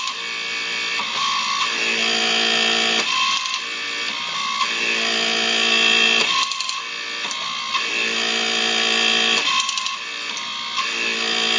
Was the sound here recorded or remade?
recorded